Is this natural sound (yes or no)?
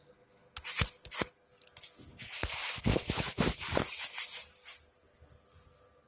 yes